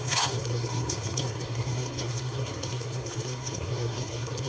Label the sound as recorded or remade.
remade